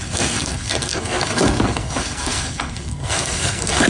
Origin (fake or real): fake